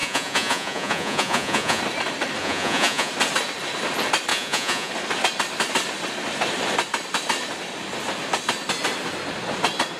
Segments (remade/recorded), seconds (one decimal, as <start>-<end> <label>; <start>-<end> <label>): 0.0-1.8 remade; 1.8-2.4 recorded; 2.4-3.1 remade; 3.1-4.3 recorded; 4.3-4.9 remade; 4.9-10.0 recorded